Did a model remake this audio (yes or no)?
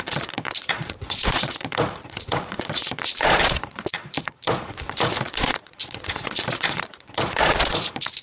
yes